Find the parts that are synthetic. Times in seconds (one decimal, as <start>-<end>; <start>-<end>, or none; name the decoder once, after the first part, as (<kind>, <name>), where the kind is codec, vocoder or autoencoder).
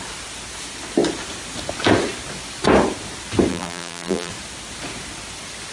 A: 3.5-4.3 (vocoder, BigVGAN v2)